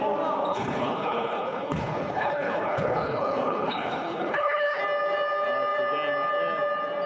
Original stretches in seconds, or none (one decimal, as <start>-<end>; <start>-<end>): 0.0-0.5; 4.8-7.1